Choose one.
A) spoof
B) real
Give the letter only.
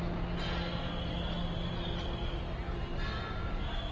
B